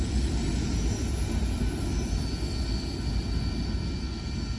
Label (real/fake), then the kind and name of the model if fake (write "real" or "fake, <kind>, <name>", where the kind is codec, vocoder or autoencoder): real